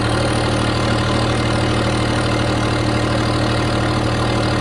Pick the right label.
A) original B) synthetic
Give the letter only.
A